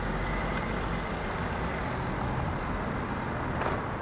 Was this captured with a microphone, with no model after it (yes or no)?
yes